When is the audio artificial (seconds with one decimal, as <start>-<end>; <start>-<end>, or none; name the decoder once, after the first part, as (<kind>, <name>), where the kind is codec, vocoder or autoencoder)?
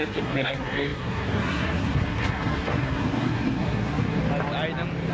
0.0-4.2 (codec, SNAC)